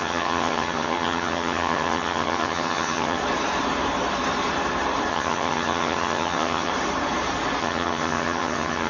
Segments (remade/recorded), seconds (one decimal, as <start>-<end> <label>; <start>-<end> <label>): 0.0-3.2 remade; 3.2-5.1 recorded; 5.1-6.7 remade; 6.7-7.6 recorded; 7.6-8.9 remade